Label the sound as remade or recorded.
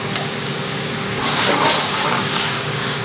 remade